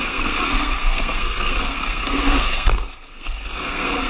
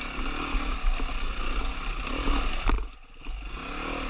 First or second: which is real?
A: second